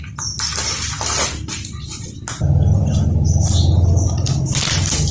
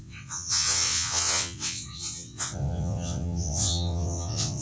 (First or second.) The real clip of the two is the first